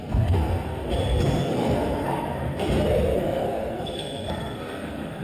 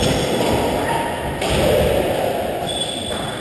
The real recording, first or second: second